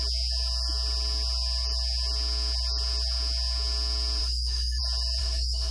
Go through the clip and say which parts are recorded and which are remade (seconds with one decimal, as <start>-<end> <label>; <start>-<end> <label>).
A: 0.0-4.2 recorded; 4.2-4.8 remade; 4.8-5.2 recorded; 5.2-5.7 remade